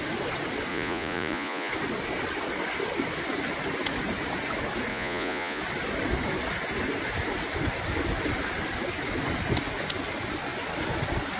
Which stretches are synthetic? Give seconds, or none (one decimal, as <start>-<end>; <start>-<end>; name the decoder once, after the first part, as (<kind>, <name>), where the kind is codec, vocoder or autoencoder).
0.7-1.7 (vocoder, Vocos); 4.9-5.6